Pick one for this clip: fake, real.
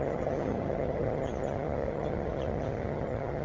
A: fake